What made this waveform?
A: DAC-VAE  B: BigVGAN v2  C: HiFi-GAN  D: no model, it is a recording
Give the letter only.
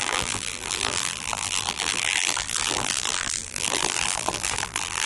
B